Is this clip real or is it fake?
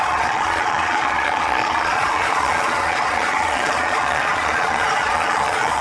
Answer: fake